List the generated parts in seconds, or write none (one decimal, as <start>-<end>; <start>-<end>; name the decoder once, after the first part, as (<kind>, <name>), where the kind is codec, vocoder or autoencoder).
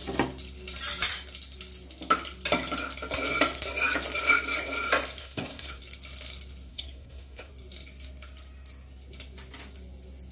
5.2-5.8 (codec, SNAC); 6.7-7.5